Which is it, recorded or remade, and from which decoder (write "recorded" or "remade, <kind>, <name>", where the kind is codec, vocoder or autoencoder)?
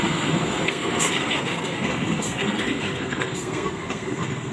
remade, codec, SNAC